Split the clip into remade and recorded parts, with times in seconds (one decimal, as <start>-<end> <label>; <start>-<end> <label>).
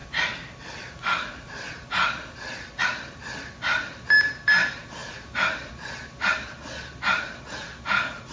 0.0-8.3 recorded